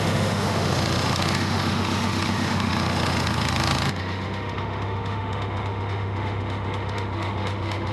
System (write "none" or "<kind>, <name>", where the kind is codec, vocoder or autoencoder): autoencoder, DAC-VAE